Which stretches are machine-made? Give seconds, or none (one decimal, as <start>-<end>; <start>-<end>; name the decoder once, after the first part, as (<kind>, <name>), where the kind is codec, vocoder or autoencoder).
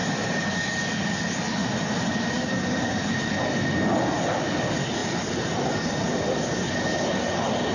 5.0-5.6 (vocoder, BigVGAN v2)